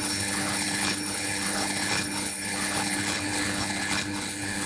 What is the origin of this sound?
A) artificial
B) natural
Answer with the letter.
A